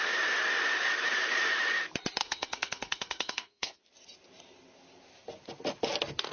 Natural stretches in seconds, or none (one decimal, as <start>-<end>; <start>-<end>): 0.0-2.2; 3.8-6.3